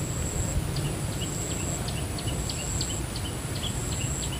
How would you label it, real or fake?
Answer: real